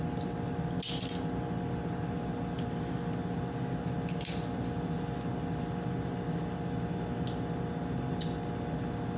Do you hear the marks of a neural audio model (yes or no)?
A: no